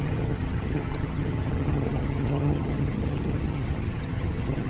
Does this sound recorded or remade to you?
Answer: remade